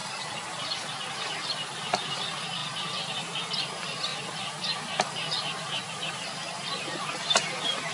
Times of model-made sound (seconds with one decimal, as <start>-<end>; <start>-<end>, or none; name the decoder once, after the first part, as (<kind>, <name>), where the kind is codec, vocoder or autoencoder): 0.0-1.8 (vocoder, BigVGAN v2)